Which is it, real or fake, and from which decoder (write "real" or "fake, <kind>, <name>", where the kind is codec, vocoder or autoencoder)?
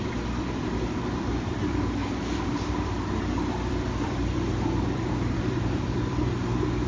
fake, vocoder, BigVGAN v2